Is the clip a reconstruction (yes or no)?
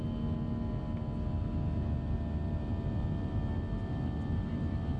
no